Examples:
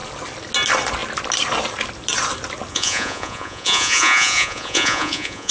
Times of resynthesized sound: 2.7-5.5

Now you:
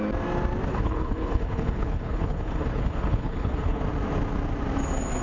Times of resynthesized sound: 0.7-3.8

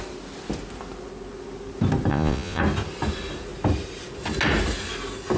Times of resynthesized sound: 2.1-2.6

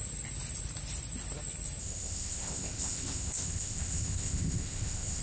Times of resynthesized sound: 1.8-5.2